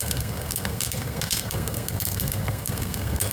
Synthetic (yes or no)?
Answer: yes